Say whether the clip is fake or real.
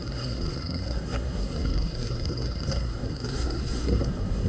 fake